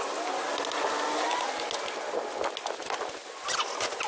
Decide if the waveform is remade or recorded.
recorded